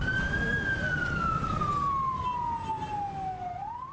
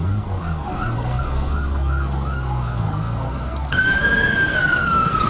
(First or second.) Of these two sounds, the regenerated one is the second